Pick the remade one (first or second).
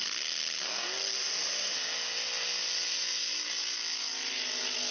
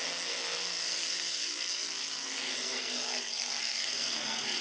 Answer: second